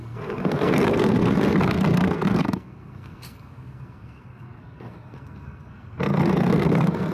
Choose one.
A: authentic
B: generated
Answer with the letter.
B